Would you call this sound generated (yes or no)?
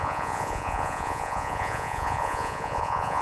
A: yes